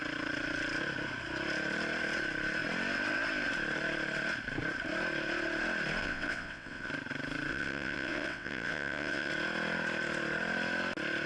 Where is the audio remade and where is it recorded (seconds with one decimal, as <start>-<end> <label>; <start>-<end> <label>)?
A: 0.0-6.0 recorded; 6.0-6.9 remade; 6.9-7.5 recorded; 7.5-9.3 remade; 9.3-11.3 recorded